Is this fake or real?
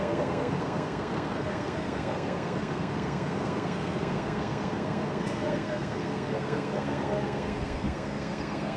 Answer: fake